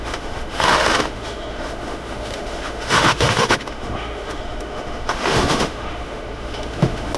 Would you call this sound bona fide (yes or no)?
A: no